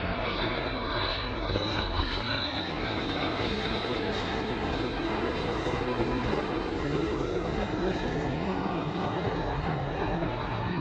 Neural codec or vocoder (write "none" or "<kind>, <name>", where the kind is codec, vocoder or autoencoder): codec, SNAC